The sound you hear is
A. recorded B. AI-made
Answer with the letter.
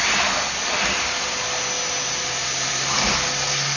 A